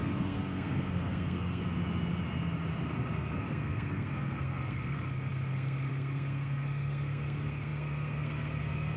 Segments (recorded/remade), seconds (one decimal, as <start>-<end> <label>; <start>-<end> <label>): 0.0-1.6 remade; 1.6-3.4 recorded; 3.4-9.0 remade